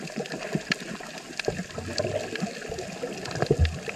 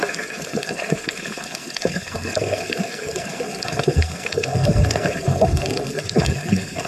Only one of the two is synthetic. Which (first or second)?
second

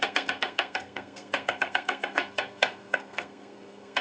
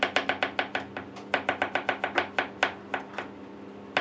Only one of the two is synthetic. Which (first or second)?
first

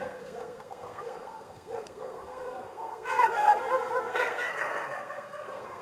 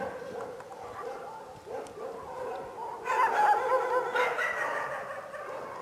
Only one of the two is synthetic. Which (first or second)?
first